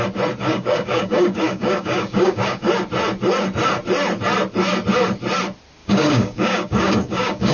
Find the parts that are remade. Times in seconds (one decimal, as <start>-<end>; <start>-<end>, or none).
0.4-2.7; 5.8-7.5